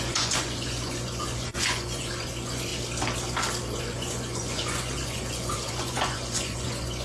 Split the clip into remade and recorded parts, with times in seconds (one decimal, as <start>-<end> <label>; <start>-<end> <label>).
0.0-2.7 remade; 2.7-3.8 recorded; 3.8-7.0 remade

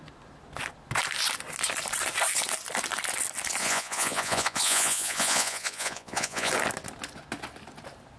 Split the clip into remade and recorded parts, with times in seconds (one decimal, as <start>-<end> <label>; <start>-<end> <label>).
0.0-3.6 recorded; 3.6-6.5 remade; 6.5-8.2 recorded

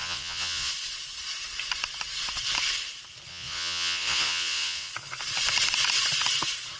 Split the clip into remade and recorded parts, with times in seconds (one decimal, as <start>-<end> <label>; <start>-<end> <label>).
0.0-0.7 remade; 0.7-3.3 recorded; 3.3-4.9 remade; 4.9-6.8 recorded

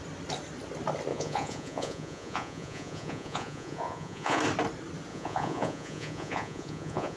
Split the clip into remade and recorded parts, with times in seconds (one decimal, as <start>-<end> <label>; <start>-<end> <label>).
0.0-1.1 recorded; 1.1-4.4 remade; 4.4-5.1 recorded; 5.1-7.2 remade

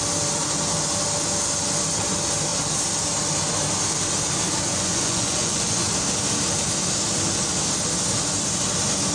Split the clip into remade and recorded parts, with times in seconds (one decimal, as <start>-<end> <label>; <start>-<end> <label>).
0.0-4.7 recorded; 4.7-5.9 remade; 5.9-9.1 recorded